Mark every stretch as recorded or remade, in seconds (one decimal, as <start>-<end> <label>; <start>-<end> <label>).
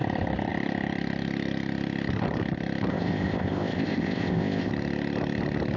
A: 0.0-2.9 recorded; 2.9-4.7 remade; 4.7-5.8 recorded